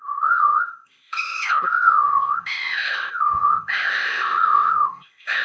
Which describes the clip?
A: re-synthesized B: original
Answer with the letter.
A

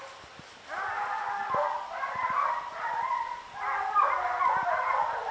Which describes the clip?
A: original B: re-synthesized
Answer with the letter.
A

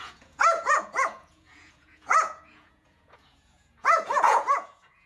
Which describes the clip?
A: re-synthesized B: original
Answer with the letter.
A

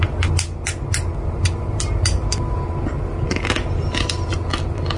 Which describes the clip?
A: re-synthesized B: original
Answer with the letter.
B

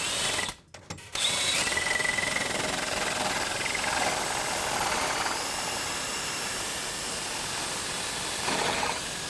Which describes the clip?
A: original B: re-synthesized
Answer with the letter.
A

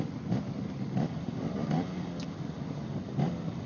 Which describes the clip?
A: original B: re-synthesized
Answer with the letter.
A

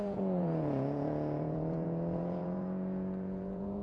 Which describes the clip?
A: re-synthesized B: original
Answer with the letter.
A